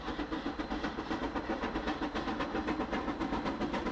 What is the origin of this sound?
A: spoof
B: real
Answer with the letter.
B